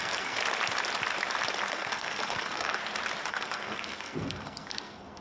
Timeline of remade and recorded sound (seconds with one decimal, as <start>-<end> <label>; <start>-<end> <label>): 0.0-0.4 remade; 0.4-1.7 recorded; 1.7-2.8 remade; 2.8-3.3 recorded; 3.3-5.2 remade